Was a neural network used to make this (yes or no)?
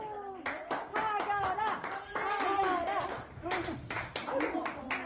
no